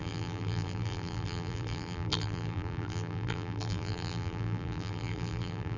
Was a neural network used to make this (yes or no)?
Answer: yes